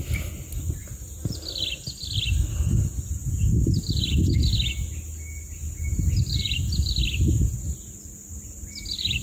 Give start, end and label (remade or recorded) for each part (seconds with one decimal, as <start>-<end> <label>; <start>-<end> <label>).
0.0-9.2 recorded